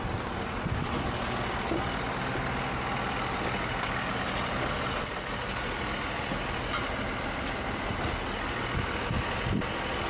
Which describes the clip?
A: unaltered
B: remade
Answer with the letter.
A